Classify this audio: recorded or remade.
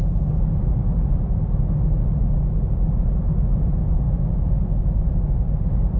recorded